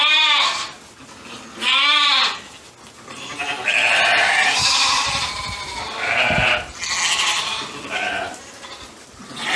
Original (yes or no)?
yes